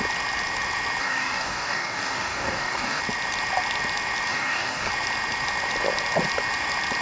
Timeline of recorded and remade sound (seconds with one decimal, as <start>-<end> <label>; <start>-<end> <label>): 0.0-1.0 recorded; 1.0-3.0 remade; 3.0-4.3 recorded; 4.3-4.9 remade; 4.9-7.0 recorded